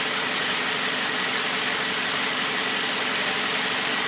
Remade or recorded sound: recorded